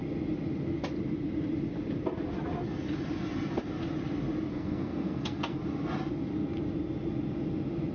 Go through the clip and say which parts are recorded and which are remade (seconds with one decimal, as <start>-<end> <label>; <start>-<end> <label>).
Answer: 0.0-4.5 recorded; 4.5-5.6 remade; 5.6-7.9 recorded